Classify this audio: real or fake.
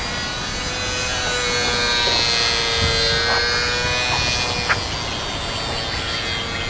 real